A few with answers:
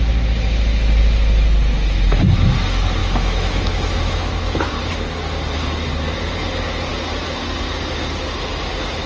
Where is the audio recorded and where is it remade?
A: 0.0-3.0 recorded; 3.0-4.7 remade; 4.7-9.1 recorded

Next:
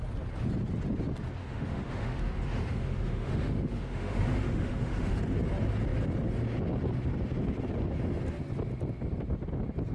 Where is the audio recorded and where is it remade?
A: 0.0-1.4 recorded; 1.4-5.2 remade; 5.2-9.9 recorded